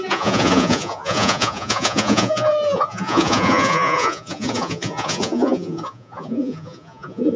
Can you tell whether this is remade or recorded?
remade